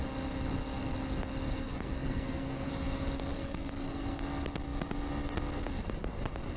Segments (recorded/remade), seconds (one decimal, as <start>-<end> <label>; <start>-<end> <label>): 0.0-1.6 recorded; 1.6-2.7 remade; 2.7-3.3 recorded; 3.3-4.2 remade; 4.2-6.6 recorded